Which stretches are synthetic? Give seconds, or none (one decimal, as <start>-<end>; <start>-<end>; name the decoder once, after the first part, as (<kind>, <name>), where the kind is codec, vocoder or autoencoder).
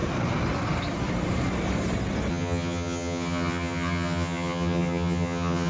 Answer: 2.3-5.7 (vocoder, HiFi-GAN)